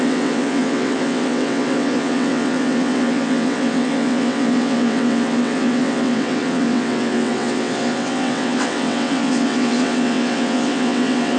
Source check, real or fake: fake